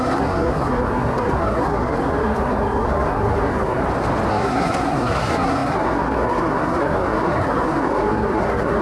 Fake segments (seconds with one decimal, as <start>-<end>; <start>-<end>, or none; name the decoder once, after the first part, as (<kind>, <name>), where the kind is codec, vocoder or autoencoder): 0.0-3.8 (codec, SNAC); 4.3-8.8